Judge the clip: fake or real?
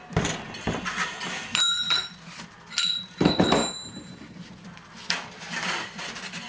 fake